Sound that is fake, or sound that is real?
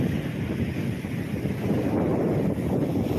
real